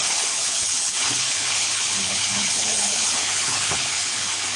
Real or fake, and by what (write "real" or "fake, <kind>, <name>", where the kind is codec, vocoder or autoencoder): fake, codec, HILCodec